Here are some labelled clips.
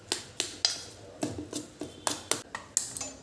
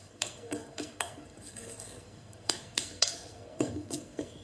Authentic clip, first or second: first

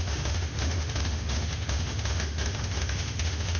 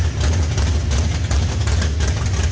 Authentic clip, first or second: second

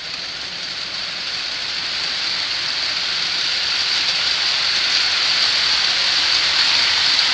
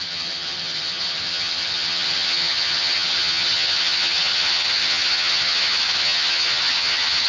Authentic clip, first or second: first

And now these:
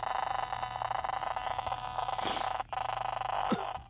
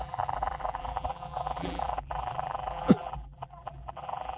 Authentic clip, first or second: first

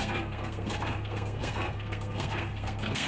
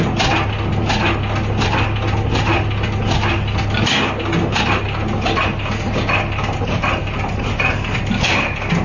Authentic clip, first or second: second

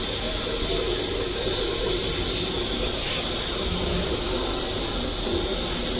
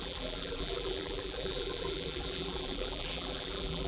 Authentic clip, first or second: first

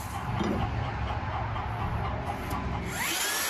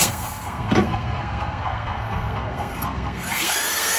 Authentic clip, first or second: first